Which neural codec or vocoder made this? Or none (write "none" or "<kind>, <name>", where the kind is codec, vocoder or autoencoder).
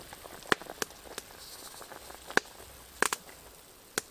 none